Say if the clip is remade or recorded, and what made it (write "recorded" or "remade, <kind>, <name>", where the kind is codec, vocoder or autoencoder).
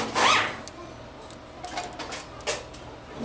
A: recorded